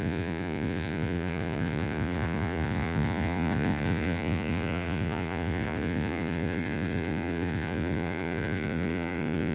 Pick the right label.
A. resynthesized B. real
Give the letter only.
A